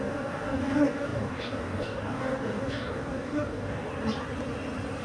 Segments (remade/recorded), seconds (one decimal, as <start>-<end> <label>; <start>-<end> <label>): 0.0-3.9 remade; 3.9-5.0 recorded